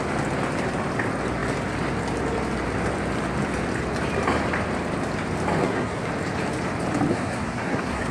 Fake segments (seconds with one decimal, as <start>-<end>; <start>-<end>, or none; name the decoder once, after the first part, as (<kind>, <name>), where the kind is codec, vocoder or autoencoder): 5.6-6.1 (codec, SNAC); 7.1-8.1